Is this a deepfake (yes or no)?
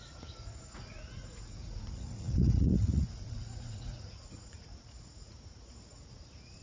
yes